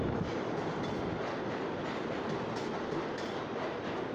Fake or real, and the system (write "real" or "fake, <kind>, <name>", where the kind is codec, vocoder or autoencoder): real